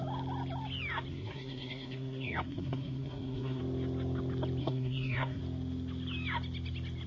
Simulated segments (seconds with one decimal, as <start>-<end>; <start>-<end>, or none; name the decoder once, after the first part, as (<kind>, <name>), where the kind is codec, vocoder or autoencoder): 1.1-3.6 (codec, SNAC); 4.6-5.4